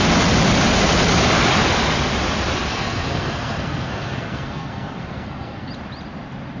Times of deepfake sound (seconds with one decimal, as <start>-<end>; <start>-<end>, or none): 2.7-5.7